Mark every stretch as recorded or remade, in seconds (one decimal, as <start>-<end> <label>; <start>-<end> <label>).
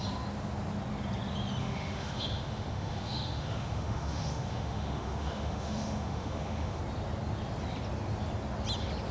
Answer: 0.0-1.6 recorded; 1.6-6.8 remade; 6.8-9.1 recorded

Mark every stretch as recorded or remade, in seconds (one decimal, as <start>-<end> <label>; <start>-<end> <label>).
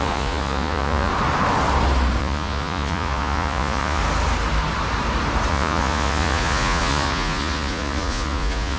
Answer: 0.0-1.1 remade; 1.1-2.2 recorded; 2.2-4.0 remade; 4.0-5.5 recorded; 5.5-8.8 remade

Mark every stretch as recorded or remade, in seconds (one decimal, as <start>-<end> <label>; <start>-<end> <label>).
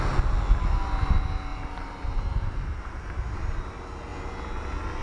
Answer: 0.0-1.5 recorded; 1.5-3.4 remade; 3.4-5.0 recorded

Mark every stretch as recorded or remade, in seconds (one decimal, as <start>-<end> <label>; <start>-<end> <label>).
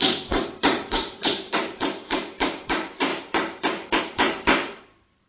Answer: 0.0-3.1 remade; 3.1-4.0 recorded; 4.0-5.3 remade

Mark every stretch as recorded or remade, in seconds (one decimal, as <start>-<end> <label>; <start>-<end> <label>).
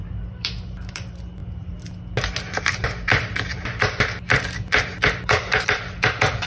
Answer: 0.0-1.4 remade; 1.4-5.3 recorded; 5.3-6.5 remade